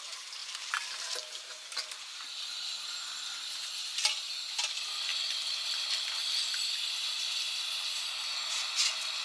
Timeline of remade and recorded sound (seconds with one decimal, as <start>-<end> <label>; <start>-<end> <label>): 0.0-0.4 recorded; 0.4-1.5 remade; 1.5-9.2 recorded